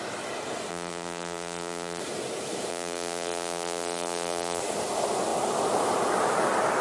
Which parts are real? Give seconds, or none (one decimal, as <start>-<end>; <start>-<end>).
0.0-0.7; 2.0-2.7; 4.6-6.8